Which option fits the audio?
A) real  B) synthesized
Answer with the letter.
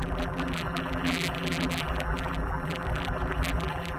B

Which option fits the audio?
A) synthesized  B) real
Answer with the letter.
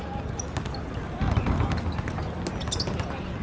B